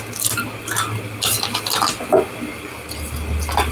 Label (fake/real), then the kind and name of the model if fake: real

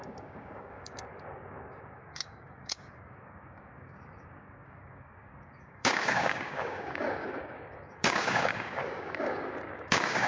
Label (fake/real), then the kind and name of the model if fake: fake, codec, DAC